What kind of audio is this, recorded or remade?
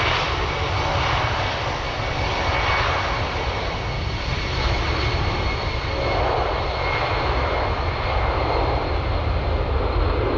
recorded